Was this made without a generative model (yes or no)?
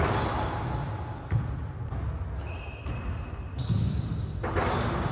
yes